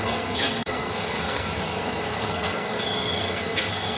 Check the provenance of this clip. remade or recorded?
remade